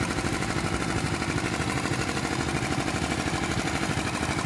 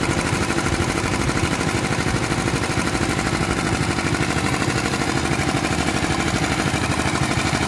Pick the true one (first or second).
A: second